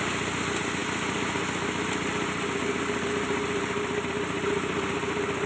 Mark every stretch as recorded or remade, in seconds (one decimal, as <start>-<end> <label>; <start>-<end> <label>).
0.0-5.5 recorded

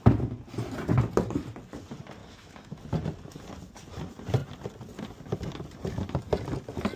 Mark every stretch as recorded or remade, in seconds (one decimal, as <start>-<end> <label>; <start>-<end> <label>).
0.0-2.2 recorded; 2.2-2.8 remade; 2.8-7.0 recorded

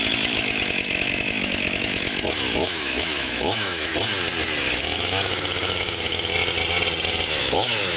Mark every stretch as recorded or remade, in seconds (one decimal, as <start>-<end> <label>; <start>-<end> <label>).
0.0-3.9 remade; 3.9-4.6 recorded; 4.6-6.3 remade; 6.3-7.4 recorded; 7.4-8.0 remade

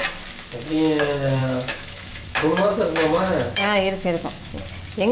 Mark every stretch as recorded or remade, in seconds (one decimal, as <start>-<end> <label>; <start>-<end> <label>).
0.0-1.4 recorded; 1.4-4.5 remade; 4.5-5.1 recorded